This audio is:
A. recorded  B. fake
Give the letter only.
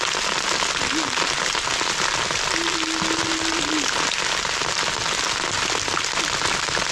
A